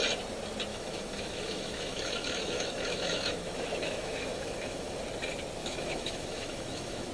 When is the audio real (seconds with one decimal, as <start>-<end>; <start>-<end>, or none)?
0.0-0.7; 5.0-5.6